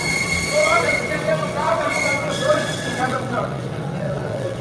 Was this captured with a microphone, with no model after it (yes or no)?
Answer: no